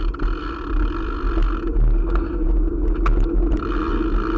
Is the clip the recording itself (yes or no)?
yes